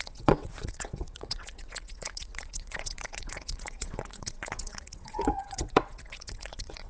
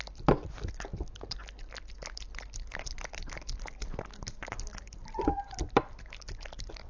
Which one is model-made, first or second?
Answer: first